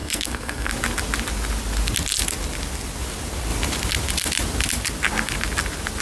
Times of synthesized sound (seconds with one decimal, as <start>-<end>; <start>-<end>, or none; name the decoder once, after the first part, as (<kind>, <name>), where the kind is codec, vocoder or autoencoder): 0.0-0.7 (codec, SNAC)